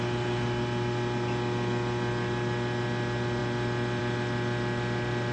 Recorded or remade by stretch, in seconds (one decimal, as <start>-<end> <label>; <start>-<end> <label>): 0.0-5.3 recorded